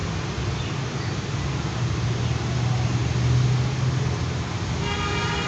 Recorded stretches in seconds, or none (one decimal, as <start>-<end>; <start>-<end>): 0.0-5.5